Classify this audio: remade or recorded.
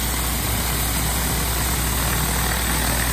recorded